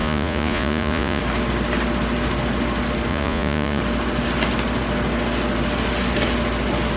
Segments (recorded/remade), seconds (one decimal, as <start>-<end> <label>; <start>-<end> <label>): 0.0-1.2 remade; 1.2-3.1 recorded; 3.1-3.8 remade; 3.8-7.0 recorded